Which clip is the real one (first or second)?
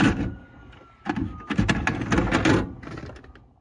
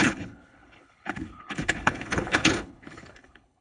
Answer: first